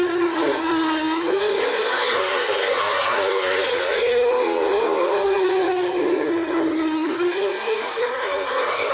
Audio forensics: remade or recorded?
remade